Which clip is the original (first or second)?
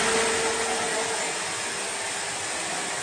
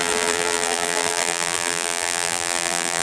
first